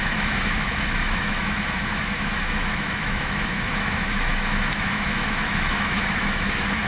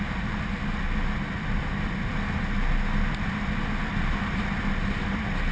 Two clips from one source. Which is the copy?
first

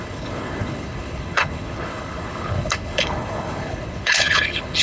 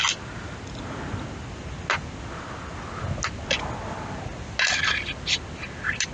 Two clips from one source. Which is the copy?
first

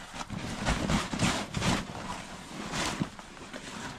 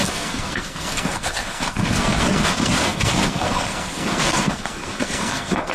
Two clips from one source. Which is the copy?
second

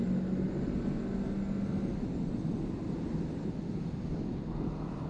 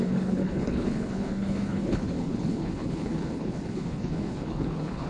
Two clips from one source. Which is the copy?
second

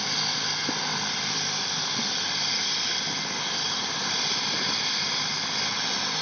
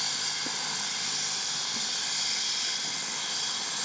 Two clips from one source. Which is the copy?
first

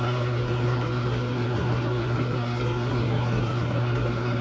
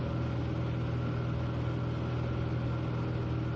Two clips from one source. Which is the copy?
first